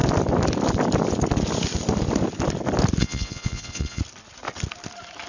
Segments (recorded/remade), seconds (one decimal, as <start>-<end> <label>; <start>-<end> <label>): 0.0-3.0 recorded; 3.0-4.0 remade; 4.0-5.3 recorded